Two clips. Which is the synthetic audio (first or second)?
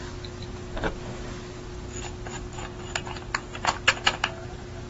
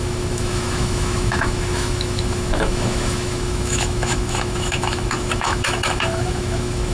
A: second